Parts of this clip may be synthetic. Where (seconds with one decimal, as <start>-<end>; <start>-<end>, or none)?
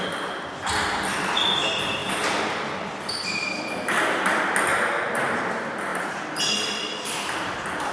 none